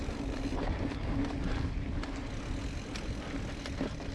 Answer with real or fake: real